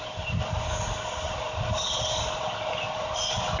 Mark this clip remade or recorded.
recorded